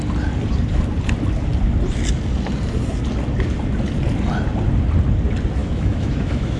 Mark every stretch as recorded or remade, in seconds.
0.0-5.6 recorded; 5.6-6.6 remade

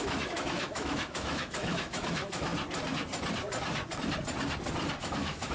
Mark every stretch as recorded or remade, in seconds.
0.0-2.5 remade; 2.5-5.0 recorded; 5.0-5.5 remade

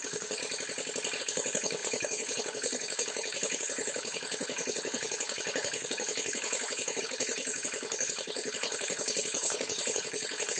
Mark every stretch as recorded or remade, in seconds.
0.0-0.4 remade; 0.4-1.2 recorded; 1.2-10.6 remade

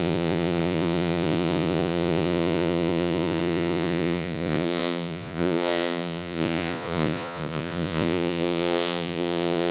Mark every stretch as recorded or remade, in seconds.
0.0-9.7 remade

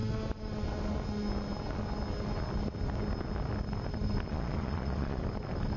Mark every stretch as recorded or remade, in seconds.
0.0-4.3 recorded; 4.3-5.2 remade; 5.2-5.8 recorded